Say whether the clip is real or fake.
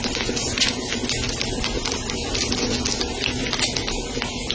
real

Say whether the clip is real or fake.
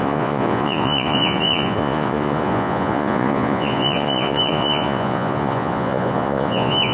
fake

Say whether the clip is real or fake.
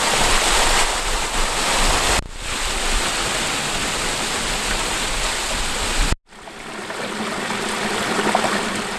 real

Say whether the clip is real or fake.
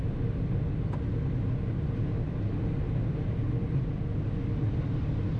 real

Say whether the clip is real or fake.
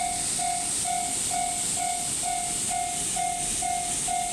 real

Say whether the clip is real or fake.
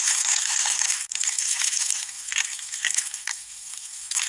fake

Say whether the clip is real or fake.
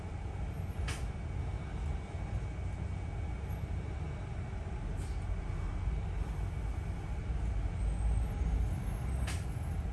real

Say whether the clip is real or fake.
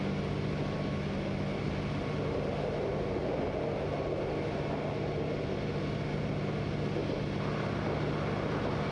real